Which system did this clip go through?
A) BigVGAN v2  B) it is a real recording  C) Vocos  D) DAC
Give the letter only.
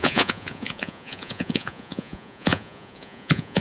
C